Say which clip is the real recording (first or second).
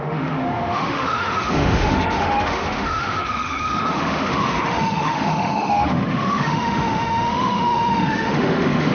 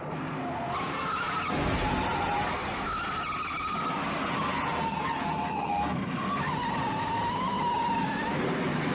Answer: second